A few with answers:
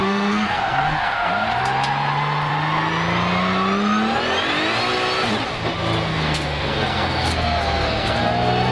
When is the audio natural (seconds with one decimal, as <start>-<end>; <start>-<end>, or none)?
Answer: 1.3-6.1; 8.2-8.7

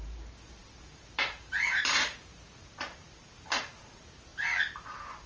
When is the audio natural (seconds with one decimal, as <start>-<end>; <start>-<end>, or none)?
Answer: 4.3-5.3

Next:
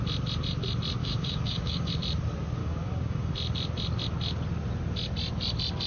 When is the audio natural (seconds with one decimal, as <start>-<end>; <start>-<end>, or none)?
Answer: 0.0-1.0; 1.9-2.6; 3.3-5.9

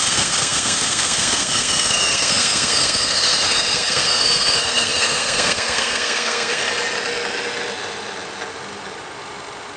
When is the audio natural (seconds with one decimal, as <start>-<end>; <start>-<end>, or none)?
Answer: 6.6-9.8

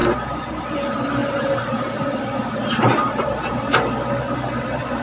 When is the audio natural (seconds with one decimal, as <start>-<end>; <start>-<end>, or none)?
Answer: 0.0-1.2; 3.7-5.0